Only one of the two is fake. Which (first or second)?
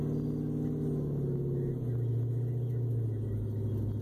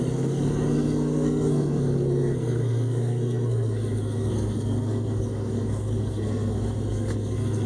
second